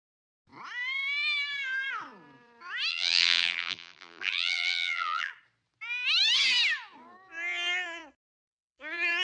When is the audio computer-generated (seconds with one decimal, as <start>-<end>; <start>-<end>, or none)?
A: 2.9-5.3